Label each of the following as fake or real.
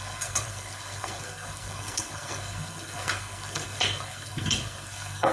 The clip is fake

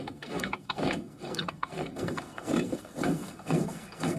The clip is fake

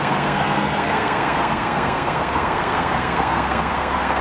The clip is fake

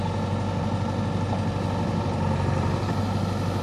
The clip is real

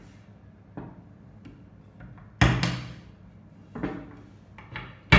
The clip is real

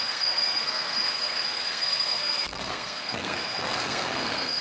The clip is fake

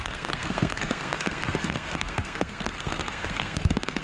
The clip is fake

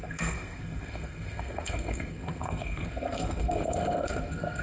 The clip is fake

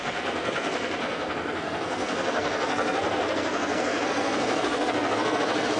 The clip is fake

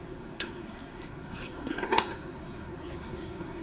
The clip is fake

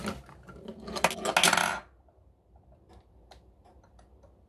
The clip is real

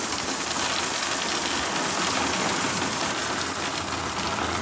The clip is real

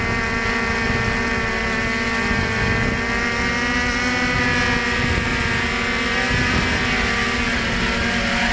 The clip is real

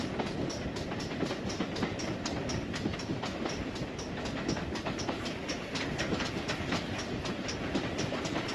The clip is real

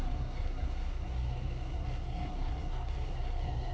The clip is fake